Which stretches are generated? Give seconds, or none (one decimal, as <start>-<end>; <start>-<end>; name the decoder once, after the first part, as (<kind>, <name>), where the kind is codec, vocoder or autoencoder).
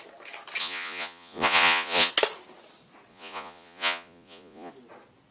0.6-2.1 (vocoder, Vocos); 3.1-4.7